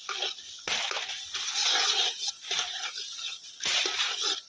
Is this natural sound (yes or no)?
yes